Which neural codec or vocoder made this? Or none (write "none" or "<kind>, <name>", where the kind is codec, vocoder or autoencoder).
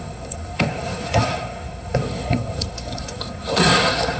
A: codec, SNAC